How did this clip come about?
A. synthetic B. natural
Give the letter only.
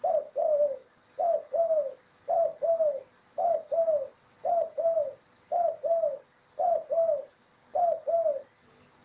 B